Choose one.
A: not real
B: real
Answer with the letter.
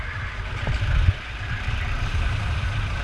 B